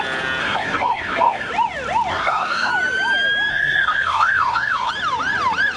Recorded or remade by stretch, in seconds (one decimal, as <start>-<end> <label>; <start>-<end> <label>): 0.0-0.4 recorded; 0.4-1.5 remade; 1.5-2.1 recorded; 2.1-2.7 remade; 2.7-3.5 recorded; 3.5-4.9 remade; 4.9-5.8 recorded